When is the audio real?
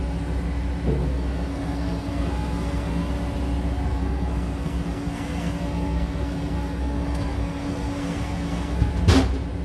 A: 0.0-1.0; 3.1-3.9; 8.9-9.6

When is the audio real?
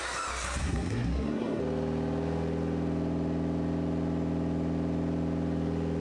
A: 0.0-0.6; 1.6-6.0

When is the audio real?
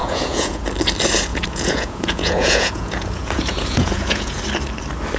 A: 0.6-1.3; 4.4-5.2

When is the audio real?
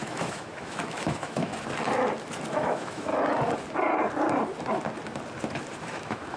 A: 1.5-2.5; 3.1-5.8